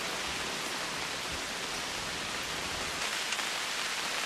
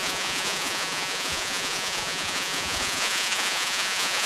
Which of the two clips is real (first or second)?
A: first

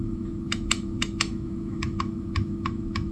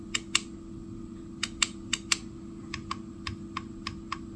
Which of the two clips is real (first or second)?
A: second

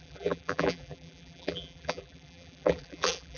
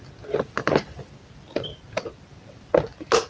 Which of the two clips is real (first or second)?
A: second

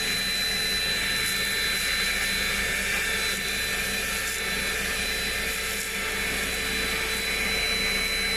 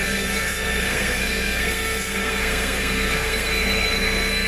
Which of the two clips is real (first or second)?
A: first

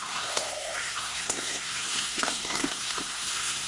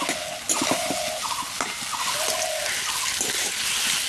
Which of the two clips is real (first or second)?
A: second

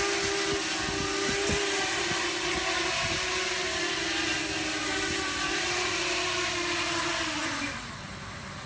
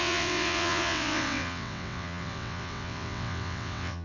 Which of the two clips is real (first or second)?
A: first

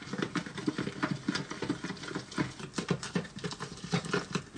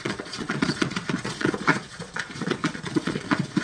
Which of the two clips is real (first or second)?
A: first